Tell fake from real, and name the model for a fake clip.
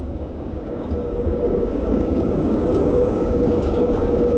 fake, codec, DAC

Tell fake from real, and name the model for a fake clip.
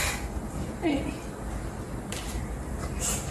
real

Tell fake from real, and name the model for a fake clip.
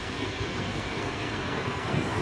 fake, codec, SNAC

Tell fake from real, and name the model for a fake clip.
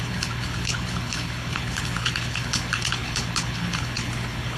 fake, codec, HILCodec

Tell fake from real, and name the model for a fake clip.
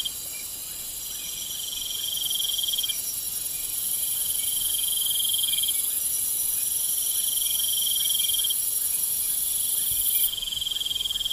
real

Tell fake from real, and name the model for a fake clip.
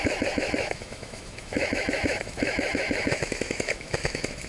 fake, autoencoder, DAC-VAE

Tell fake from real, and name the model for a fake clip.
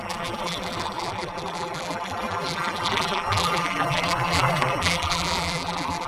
fake, vocoder, BigVGAN v2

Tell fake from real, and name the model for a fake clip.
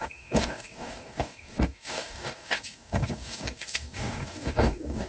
fake, codec, DAC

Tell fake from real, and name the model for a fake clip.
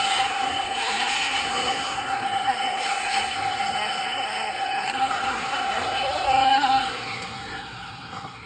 fake, codec, SNAC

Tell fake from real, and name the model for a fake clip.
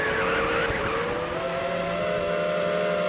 real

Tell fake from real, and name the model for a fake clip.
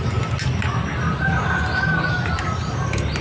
real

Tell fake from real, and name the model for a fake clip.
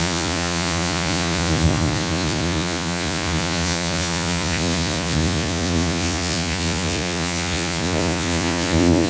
fake, vocoder, Vocos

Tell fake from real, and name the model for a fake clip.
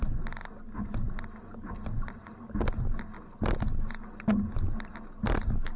real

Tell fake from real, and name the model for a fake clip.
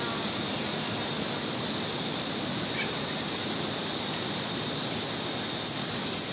real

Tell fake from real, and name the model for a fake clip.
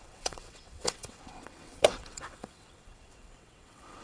fake, vocoder, WaveNeXt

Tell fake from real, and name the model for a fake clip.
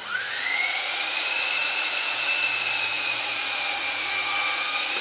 fake, vocoder, Vocos